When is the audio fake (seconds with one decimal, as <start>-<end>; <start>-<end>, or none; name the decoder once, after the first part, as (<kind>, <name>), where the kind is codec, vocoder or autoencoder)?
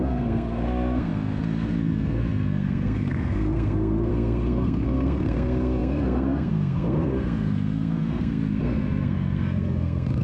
0.0-10.2 (codec, SNAC)